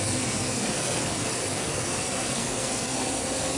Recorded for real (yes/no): no